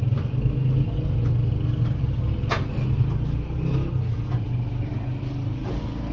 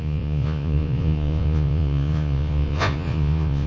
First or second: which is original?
first